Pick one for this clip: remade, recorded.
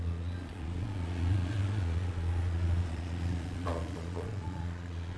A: remade